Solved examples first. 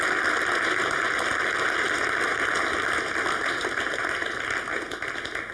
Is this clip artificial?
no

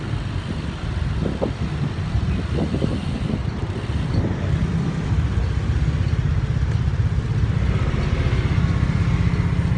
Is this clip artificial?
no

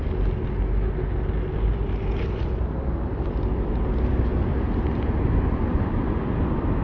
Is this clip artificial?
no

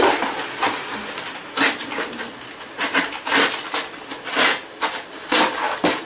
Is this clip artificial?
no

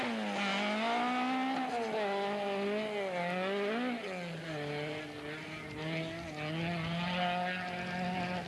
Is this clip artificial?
no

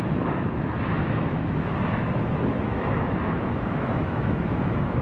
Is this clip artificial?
yes